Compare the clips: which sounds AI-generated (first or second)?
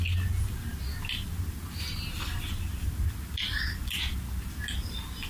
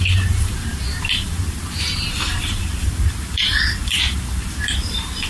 second